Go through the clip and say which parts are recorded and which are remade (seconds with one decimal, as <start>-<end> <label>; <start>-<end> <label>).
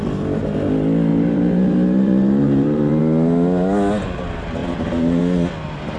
0.0-1.1 recorded; 1.1-3.0 remade; 3.0-4.6 recorded; 4.6-5.2 remade; 5.2-6.0 recorded